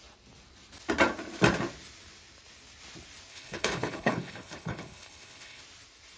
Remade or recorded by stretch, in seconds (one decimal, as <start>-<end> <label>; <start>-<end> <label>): 0.0-3.3 recorded; 3.3-5.6 remade; 5.6-6.2 recorded